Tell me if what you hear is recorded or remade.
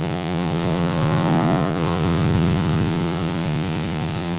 remade